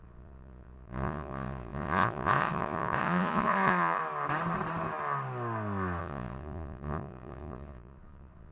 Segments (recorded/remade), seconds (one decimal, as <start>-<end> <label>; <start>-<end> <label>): 0.0-4.0 remade; 4.0-6.0 recorded; 6.0-8.5 remade